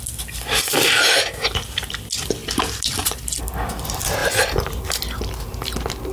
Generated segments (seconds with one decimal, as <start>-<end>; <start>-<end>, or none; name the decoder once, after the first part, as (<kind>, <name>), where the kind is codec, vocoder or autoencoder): none